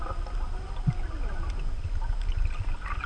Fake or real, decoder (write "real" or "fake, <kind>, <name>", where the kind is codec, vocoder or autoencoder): real